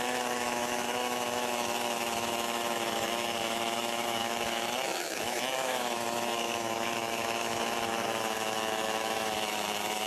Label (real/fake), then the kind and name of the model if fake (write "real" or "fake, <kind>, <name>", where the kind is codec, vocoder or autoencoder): fake, autoencoder, DAC-VAE